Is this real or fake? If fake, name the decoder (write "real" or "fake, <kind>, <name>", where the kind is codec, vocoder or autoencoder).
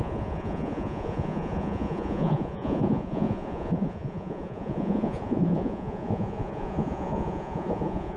fake, vocoder, Vocos